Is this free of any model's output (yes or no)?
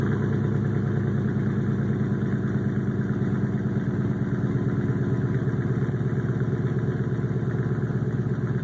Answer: yes